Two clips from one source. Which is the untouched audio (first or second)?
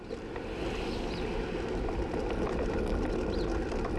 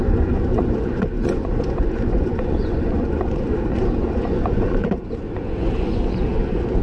first